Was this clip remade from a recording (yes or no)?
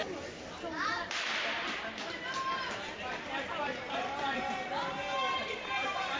yes